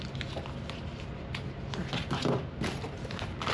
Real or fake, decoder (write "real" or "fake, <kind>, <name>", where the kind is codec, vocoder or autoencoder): real